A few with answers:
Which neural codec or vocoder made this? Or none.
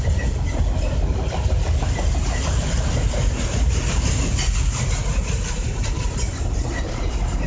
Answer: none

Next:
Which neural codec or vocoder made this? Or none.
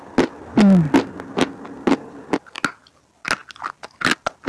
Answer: none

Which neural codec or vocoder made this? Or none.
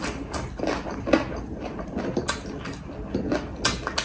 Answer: none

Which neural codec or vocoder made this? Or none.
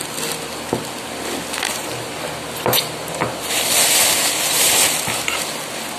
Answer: none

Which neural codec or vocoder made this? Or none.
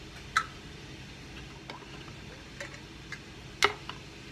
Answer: none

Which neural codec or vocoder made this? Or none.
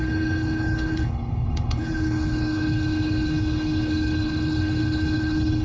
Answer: codec, HILCodec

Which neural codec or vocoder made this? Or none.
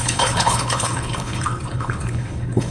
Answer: codec, HILCodec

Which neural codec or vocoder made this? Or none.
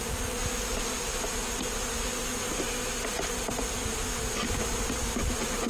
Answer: none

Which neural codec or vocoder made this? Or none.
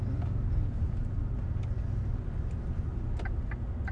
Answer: none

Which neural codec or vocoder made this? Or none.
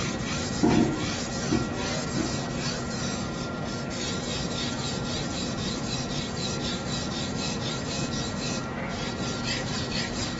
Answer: none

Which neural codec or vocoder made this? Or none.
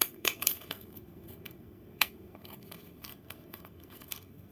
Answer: codec, SNAC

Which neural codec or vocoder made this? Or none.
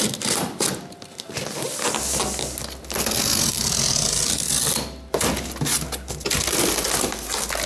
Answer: none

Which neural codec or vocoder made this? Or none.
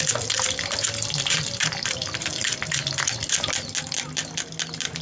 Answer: none